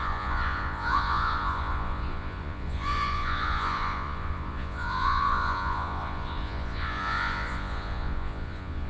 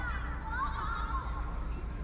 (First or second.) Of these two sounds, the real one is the second